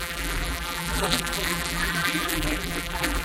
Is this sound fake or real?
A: fake